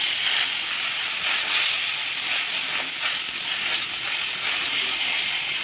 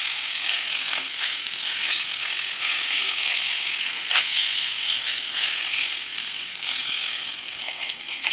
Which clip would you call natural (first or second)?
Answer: first